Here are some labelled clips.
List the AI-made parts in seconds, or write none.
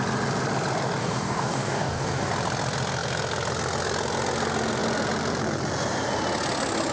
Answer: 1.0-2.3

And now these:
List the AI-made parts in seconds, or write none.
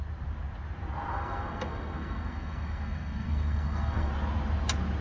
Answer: 1.1-4.1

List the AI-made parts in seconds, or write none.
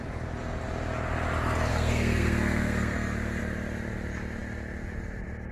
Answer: 1.7-3.4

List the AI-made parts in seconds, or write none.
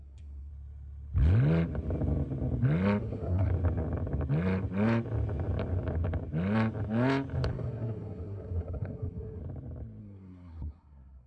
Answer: 0.0-0.5; 3.0-3.5; 7.5-9.4; 10.0-11.3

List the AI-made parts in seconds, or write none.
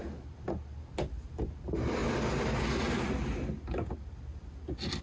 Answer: none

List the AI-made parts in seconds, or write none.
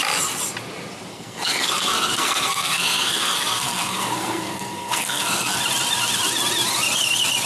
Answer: 1.1-5.6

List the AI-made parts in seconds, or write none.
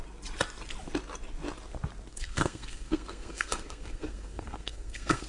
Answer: 2.1-5.3